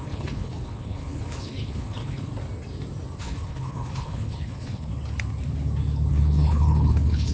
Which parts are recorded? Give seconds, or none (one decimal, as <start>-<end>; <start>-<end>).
2.3-3.2; 4.9-6.1